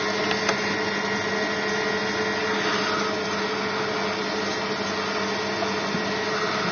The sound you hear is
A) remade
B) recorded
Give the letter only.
B